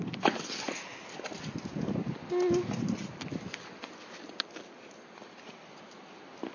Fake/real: real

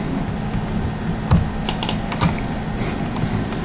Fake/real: real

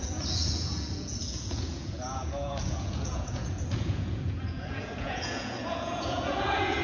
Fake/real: fake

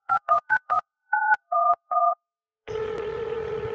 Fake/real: fake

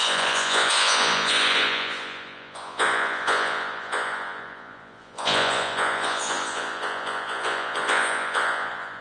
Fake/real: fake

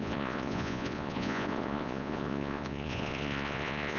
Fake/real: fake